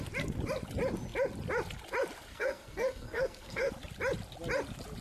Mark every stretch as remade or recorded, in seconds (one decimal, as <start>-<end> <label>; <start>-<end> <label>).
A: 0.0-2.3 recorded; 2.3-3.7 remade; 3.7-5.0 recorded